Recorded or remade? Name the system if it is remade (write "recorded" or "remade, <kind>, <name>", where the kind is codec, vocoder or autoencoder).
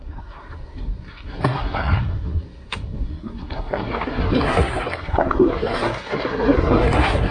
remade, codec, SNAC